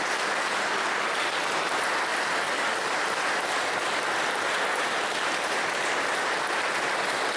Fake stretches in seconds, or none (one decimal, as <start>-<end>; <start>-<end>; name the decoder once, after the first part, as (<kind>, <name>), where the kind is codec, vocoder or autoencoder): none